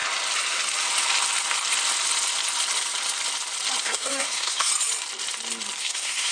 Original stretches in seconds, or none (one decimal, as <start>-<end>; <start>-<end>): 0.0-3.8; 4.7-5.8